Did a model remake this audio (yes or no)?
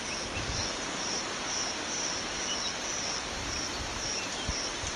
yes